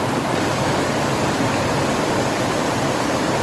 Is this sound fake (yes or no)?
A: no